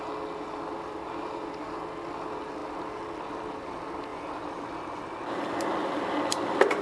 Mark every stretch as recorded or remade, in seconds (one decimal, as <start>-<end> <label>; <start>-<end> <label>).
0.0-4.1 recorded; 4.1-5.0 remade; 5.0-6.8 recorded